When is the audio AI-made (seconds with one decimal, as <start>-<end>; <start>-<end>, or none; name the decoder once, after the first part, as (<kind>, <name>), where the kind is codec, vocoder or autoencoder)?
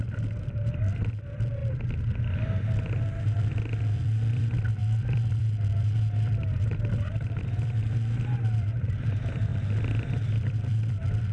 0.0-1.6 (vocoder, BigVGAN v2); 3.2-11.3